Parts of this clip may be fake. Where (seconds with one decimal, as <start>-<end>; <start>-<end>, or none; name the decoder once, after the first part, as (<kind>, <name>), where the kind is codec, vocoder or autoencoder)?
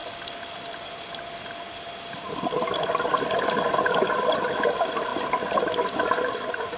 none